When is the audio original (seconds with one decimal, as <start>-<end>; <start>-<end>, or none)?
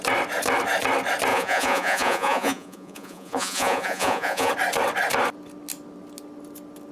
0.0-1.3; 4.5-6.9